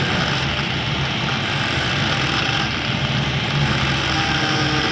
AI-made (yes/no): no